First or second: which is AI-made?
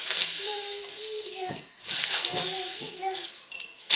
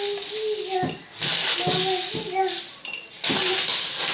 first